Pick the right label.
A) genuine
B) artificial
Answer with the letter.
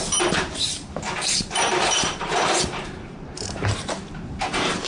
B